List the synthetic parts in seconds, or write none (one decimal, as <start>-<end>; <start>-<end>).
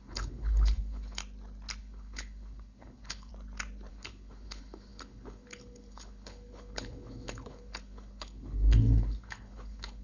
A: 0.0-1.2; 1.8-3.3; 3.9-10.0